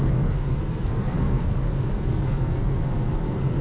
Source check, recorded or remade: remade